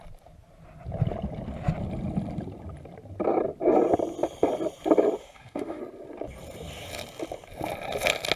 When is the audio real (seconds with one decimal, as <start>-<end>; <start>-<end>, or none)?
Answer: 0.0-5.2; 5.8-8.4